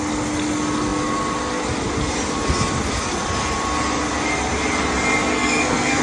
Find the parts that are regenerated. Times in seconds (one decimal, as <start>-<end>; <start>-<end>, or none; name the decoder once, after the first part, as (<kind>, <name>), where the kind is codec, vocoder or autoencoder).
5.3-6.0 (codec, SNAC)